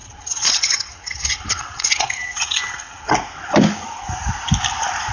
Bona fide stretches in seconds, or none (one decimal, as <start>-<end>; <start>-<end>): 3.1-5.1